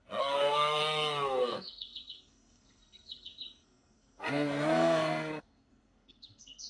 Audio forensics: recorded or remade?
remade